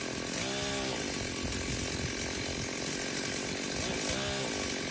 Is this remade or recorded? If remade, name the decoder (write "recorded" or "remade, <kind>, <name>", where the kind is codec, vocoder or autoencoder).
recorded